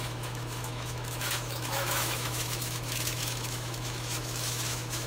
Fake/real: fake